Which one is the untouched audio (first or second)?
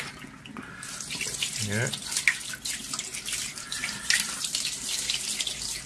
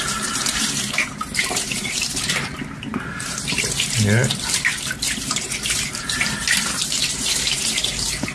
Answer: first